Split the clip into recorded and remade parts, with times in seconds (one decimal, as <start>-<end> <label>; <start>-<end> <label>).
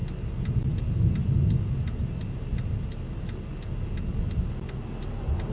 0.0-5.5 recorded